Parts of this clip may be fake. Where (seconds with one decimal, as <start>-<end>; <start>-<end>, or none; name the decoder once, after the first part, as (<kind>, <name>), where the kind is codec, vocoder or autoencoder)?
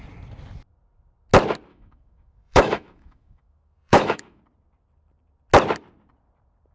1.7-4.4 (autoencoder, DAC-VAE)